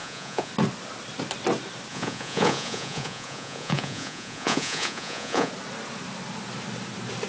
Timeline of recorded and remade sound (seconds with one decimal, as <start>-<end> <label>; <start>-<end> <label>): 0.0-0.5 remade; 0.5-1.9 recorded; 1.9-5.5 remade; 5.5-7.3 recorded